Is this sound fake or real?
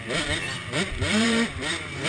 fake